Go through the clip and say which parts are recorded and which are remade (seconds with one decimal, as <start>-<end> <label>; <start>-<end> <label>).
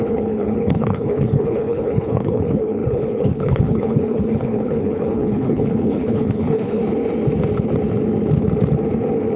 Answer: 0.0-6.8 remade; 6.8-9.4 recorded